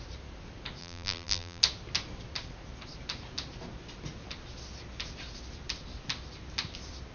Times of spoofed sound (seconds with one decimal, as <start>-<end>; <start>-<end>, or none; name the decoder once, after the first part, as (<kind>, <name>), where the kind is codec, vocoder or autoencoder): 0.8-1.6 (vocoder, BigVGAN v2)